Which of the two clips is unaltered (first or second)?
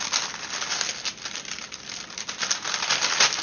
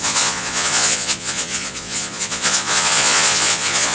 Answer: first